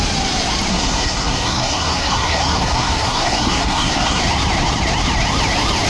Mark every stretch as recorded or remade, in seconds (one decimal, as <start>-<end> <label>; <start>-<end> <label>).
0.0-0.7 recorded; 0.7-4.2 remade; 4.2-5.9 recorded